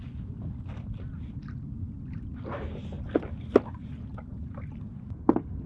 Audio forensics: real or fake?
real